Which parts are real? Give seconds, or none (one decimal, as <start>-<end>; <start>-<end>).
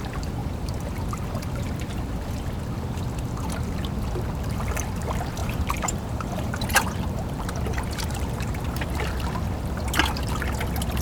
0.0-5.4; 8.8-11.0